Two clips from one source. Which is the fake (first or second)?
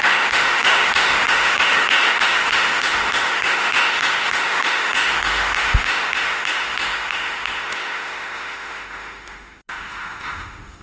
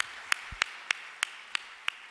first